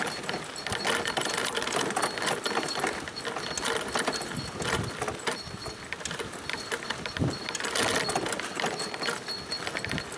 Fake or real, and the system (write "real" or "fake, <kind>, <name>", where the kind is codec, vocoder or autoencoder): real